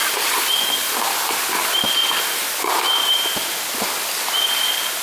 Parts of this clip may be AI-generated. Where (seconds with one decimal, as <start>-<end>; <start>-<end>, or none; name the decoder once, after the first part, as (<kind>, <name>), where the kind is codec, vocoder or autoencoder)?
none